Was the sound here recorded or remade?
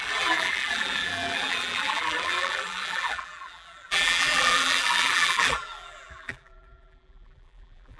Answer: remade